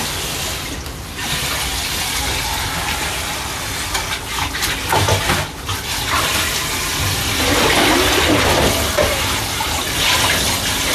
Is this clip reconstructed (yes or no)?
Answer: no